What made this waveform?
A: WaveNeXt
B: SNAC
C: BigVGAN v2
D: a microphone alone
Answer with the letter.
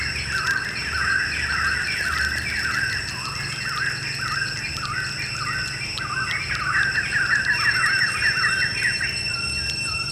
D